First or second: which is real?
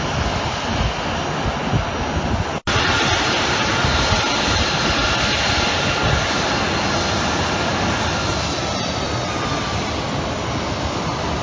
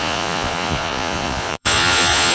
first